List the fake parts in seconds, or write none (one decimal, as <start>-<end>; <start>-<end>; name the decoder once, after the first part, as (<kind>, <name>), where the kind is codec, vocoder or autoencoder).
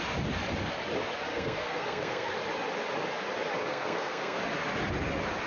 1.3-2.3 (codec, SNAC); 3.7-4.4